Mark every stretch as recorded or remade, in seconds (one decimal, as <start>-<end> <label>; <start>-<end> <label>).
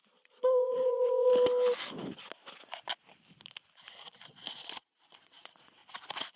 0.0-1.3 remade; 1.3-4.3 recorded; 4.3-5.8 remade; 5.8-6.4 recorded